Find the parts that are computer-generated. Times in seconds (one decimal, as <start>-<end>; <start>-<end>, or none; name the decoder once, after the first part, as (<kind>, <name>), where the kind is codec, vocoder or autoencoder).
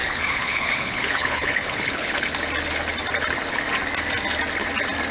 0.0-2.2 (codec, HILCodec)